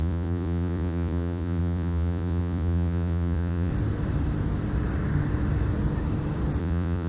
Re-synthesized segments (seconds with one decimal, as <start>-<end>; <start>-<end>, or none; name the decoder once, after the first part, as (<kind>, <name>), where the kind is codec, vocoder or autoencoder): 0.0-3.7 (vocoder, Vocos); 6.6-7.1